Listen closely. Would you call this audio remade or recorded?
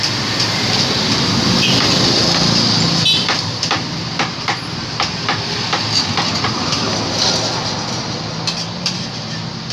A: recorded